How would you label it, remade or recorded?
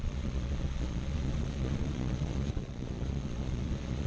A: remade